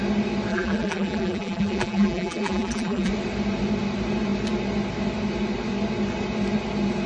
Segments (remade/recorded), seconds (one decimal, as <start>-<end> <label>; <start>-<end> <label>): 0.0-0.5 recorded; 0.5-3.1 remade; 3.1-7.1 recorded